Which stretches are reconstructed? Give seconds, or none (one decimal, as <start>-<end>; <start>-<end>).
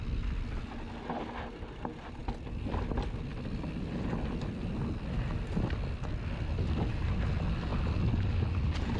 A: none